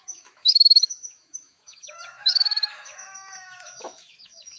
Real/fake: fake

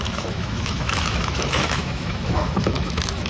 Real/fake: fake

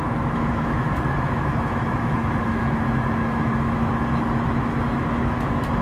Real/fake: fake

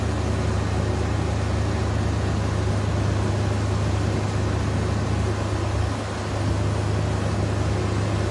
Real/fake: real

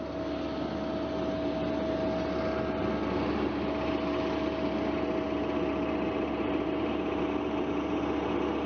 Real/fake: real